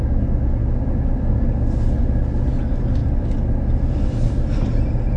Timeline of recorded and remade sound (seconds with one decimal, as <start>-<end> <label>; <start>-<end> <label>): 0.0-5.2 recorded